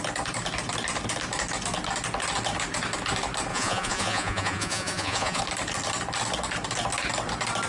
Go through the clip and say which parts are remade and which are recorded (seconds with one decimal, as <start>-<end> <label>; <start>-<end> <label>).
0.0-3.5 recorded; 3.5-5.4 remade; 5.4-7.7 recorded